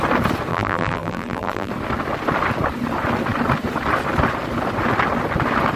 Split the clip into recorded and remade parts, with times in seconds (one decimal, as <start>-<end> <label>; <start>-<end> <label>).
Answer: 0.0-0.5 recorded; 0.5-1.7 remade; 1.7-5.8 recorded